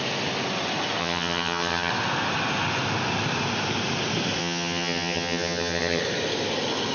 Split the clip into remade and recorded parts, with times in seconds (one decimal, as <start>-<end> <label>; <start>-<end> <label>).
0.0-1.0 recorded; 1.0-1.9 remade; 1.9-4.4 recorded; 4.4-6.0 remade; 6.0-6.9 recorded